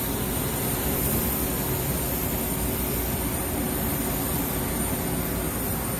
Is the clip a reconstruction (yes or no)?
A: no